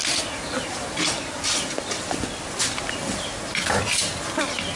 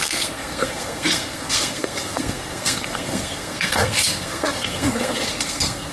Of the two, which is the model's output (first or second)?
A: second